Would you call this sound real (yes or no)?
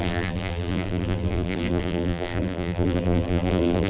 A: no